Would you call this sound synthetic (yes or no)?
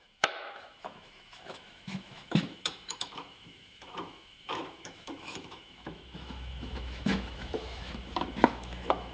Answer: yes